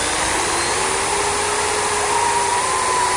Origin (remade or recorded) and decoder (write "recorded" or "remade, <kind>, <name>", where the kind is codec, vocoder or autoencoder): recorded